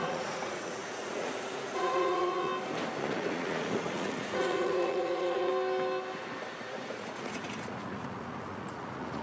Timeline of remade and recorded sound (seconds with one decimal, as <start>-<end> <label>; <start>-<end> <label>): 0.0-2.5 remade; 2.5-3.0 recorded; 3.0-5.5 remade; 5.5-6.5 recorded; 6.5-9.2 remade